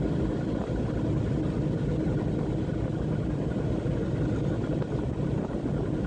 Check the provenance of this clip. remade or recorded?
recorded